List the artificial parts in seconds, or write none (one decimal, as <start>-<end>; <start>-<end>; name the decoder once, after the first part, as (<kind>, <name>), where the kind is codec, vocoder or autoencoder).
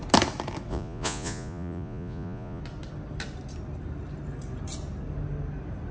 0.7-2.6 (vocoder, Vocos)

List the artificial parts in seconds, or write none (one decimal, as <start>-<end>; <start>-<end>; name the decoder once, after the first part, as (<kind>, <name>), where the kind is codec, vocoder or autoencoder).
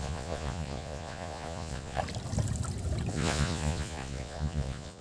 0.0-2.0 (vocoder, Vocos); 3.1-5.0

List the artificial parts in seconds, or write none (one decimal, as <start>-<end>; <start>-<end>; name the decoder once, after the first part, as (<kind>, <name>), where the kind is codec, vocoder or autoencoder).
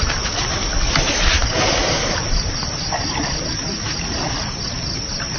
none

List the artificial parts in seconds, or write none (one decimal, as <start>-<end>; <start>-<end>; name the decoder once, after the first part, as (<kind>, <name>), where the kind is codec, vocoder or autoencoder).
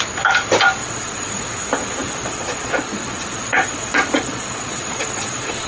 0.8-1.3 (vocoder, Vocos); 2.0-5.7